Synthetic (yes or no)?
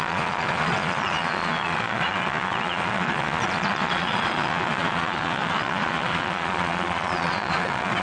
yes